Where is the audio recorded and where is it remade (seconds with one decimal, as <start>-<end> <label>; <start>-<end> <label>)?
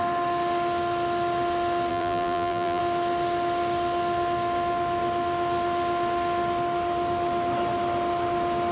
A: 0.0-1.9 recorded; 1.9-2.8 remade; 2.8-8.7 recorded